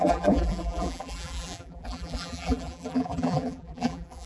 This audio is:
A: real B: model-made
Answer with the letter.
B